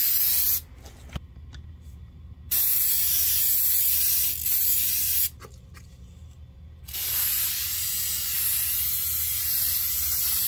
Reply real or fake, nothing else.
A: real